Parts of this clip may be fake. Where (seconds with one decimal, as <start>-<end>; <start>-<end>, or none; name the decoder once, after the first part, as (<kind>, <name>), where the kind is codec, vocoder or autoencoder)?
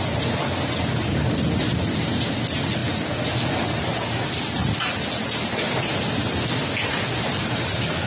none